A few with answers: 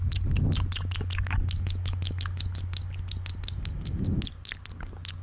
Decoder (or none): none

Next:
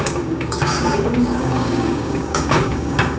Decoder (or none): codec, DAC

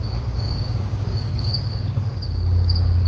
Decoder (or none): codec, DAC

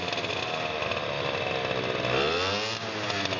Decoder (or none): none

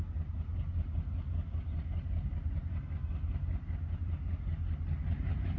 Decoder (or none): none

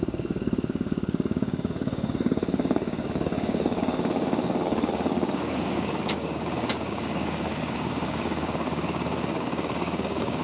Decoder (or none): codec, DAC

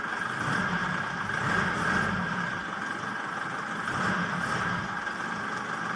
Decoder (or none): none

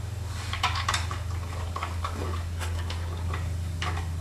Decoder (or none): codec, DAC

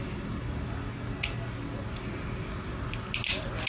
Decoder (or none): none